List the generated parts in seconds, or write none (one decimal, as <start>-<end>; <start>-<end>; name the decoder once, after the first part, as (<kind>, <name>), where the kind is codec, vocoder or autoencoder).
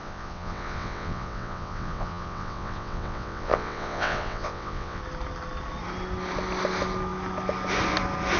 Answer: 0.0-5.0 (vocoder, WaveNeXt)